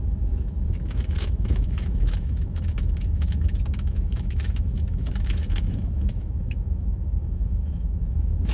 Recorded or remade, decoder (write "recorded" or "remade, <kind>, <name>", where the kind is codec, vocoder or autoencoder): remade, autoencoder, DAC-VAE